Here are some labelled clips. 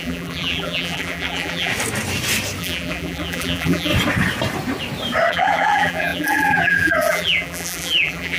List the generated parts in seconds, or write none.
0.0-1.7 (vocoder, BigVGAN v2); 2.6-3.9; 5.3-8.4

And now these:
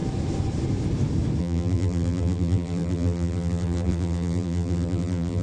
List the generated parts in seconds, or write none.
1.4-5.4 (vocoder, BigVGAN v2)

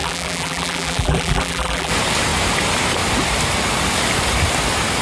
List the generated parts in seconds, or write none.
0.0-1.9 (vocoder, BigVGAN v2)

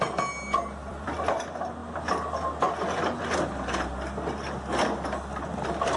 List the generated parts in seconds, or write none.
0.8-1.4 (vocoder, BigVGAN v2)

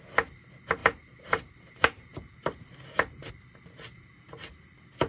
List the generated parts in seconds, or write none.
0.8-3.3 (vocoder, BigVGAN v2)

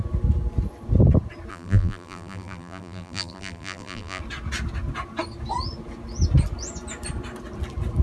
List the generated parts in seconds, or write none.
1.5-4.2 (vocoder, BigVGAN v2)